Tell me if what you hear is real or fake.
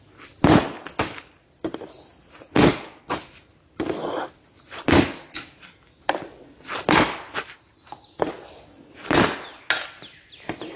real